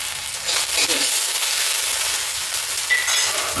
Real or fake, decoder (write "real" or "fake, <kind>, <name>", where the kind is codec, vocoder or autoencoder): real